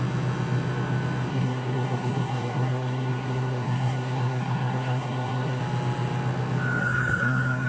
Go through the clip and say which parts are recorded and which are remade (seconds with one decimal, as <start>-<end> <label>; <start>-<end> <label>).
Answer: 0.0-1.3 recorded; 1.3-5.6 remade; 5.6-6.8 recorded; 6.8-7.7 remade